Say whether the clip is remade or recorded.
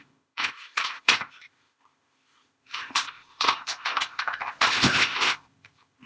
remade